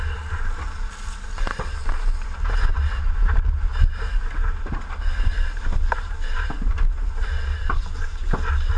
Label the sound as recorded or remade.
recorded